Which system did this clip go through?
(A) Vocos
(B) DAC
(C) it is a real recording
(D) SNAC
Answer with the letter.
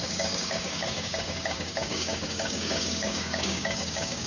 B